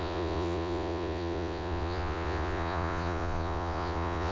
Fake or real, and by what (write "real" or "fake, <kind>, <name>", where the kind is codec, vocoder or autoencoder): fake, vocoder, Vocos